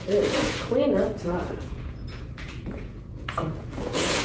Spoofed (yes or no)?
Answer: yes